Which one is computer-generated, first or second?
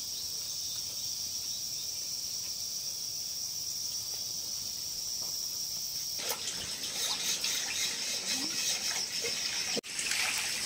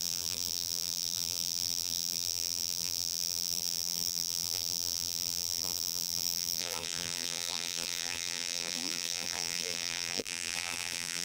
second